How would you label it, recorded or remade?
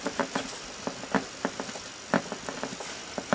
recorded